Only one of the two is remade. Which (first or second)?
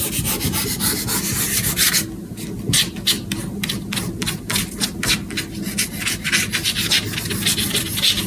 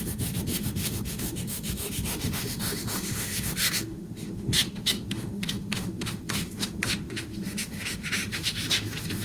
second